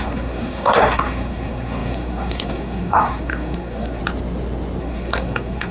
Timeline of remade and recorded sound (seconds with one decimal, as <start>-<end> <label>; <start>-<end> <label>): 0.0-4.0 remade; 4.0-4.8 recorded; 4.8-5.7 remade